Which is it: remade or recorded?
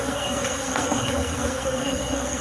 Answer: remade